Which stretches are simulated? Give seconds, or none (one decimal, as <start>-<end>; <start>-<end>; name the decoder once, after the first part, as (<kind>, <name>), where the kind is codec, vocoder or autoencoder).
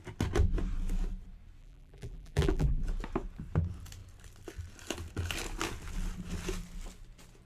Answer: 1.6-2.8 (vocoder, BigVGAN v2)